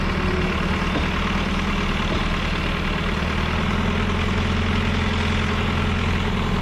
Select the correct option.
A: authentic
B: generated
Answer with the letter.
A